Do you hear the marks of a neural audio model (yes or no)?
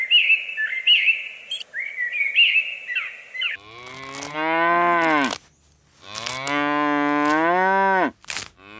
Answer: no